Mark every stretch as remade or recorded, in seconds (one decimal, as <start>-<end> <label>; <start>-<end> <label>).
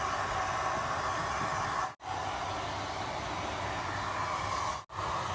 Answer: 0.0-5.3 recorded